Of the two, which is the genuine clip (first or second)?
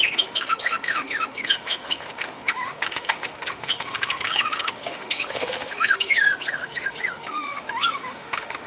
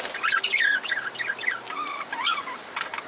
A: second